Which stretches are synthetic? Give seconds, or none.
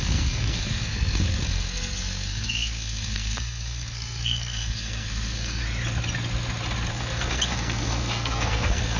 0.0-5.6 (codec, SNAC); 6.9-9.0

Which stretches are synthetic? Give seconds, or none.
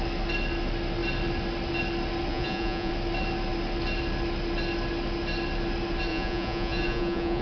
2.3-2.9 (vocoder, Vocos); 6.1-7.4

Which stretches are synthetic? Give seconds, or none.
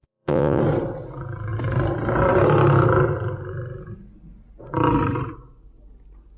0.0-0.6 (vocoder, Vocos)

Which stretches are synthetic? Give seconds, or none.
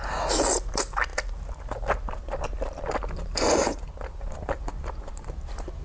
none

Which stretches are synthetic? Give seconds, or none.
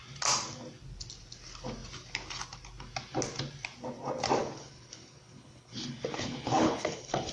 4.4-7.3 (codec, HILCodec)